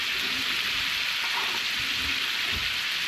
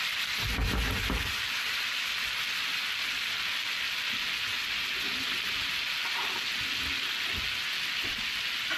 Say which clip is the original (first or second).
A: second